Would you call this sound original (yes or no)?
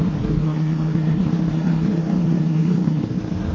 no